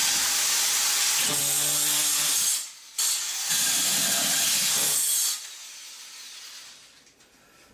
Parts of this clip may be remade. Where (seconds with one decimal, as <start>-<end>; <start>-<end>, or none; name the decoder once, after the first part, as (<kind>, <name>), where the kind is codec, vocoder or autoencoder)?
none